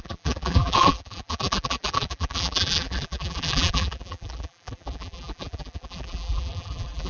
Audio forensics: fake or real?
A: fake